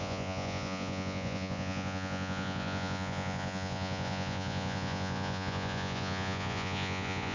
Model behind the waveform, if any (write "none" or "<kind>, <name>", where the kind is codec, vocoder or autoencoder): vocoder, Vocos